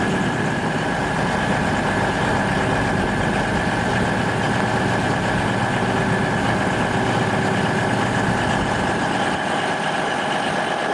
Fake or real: real